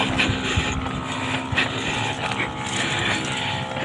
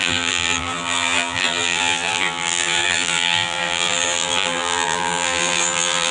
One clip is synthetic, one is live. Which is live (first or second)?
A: first